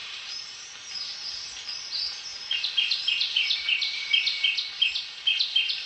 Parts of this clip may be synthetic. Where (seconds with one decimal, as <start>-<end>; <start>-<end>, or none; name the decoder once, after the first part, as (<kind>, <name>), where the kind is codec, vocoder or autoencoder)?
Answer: 0.0-0.9 (vocoder, BigVGAN v2); 2.3-4.4